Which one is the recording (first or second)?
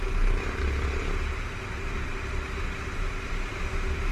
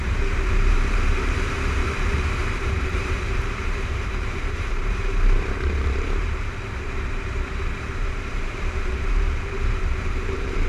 first